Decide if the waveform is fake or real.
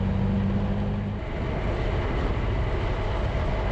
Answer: real